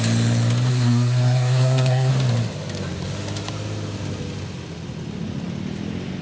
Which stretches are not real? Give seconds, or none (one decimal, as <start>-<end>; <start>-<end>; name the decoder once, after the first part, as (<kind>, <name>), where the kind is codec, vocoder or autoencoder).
0.7-2.1 (codec, SNAC)